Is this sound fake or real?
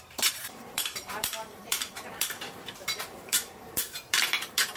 fake